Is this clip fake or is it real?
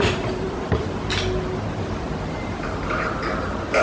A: fake